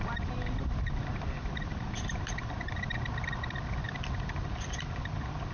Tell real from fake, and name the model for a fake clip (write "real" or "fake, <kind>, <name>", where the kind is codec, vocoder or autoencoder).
real